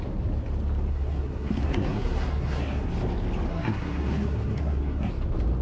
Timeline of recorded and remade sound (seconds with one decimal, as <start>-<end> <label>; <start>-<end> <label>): 0.0-0.9 recorded; 0.9-2.9 remade; 2.9-3.5 recorded; 3.5-5.1 remade; 5.1-5.6 recorded